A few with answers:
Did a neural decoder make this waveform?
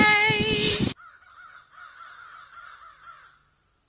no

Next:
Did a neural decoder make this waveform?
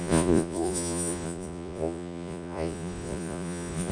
yes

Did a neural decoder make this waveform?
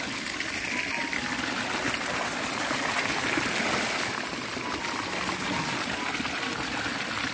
no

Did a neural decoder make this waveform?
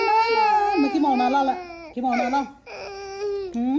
no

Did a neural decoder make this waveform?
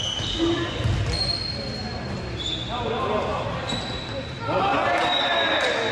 no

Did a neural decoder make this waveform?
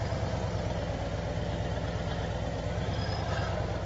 no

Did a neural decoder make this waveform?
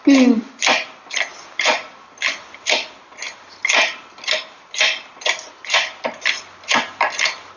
no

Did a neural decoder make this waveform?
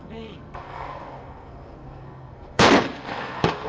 yes